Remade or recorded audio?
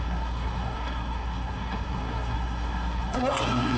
remade